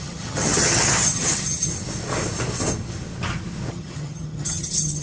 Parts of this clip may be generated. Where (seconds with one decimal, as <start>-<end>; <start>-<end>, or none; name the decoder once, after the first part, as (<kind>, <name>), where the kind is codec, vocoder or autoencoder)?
0.0-1.7 (vocoder, HiFi-GAN); 3.7-5.0